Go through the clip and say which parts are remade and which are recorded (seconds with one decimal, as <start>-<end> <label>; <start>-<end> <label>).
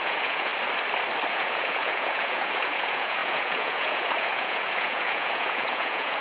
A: 0.0-0.5 remade; 0.5-1.3 recorded; 1.3-6.2 remade